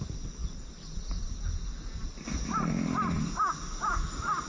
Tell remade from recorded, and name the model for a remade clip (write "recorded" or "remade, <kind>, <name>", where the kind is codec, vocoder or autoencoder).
recorded